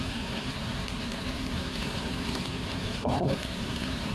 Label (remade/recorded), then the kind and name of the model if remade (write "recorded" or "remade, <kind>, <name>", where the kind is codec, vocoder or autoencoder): remade, codec, SNAC